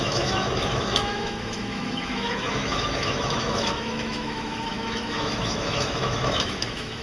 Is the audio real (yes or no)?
no